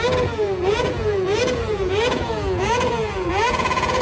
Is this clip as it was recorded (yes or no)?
no